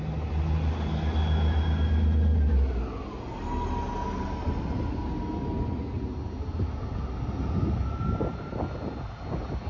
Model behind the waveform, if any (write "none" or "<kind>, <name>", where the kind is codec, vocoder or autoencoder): none